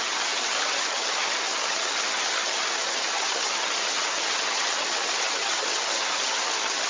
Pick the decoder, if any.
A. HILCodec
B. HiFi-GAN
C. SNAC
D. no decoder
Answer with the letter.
B